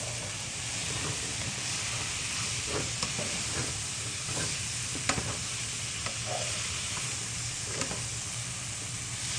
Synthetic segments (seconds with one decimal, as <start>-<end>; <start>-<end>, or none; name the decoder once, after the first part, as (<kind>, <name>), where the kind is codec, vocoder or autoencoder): 0.8-5.3 (vocoder, BigVGAN v2)